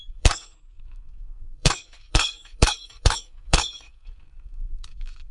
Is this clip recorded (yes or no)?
no